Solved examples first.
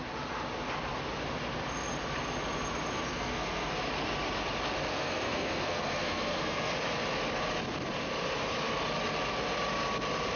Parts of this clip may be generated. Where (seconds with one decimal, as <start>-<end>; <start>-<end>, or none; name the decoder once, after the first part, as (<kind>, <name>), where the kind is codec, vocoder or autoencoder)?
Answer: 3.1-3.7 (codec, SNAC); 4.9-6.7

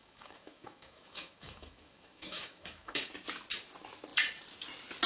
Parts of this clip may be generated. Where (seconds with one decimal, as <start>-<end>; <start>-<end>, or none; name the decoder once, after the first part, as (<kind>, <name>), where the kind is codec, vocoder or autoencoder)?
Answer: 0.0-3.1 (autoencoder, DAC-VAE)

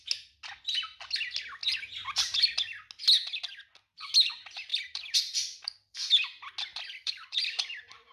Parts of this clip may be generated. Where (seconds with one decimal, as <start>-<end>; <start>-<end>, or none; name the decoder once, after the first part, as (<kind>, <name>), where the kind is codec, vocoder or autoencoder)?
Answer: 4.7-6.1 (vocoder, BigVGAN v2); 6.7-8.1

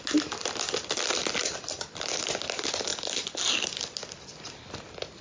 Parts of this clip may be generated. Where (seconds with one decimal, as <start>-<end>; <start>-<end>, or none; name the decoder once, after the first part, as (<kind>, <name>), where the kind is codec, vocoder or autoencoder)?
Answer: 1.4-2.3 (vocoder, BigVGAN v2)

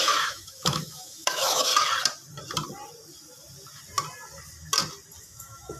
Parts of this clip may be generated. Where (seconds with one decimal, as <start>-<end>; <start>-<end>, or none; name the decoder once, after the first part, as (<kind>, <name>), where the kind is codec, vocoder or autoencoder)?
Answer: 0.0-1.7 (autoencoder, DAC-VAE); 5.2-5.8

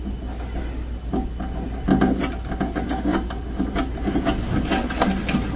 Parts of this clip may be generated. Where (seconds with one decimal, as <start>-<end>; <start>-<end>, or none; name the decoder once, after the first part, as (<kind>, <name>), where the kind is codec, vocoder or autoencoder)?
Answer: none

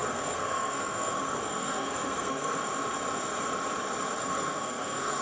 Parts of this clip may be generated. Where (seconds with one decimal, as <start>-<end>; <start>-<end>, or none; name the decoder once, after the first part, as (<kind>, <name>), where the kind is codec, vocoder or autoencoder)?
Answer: 0.0-2.6 (codec, SNAC); 4.2-5.2